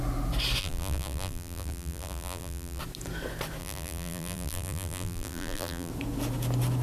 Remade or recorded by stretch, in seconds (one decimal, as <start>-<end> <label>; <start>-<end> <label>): 0.0-0.6 recorded; 0.6-2.8 remade; 2.8-3.6 recorded; 3.6-5.9 remade; 5.9-6.8 recorded